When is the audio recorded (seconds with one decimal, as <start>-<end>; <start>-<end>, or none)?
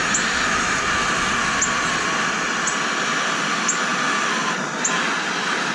0.0-5.7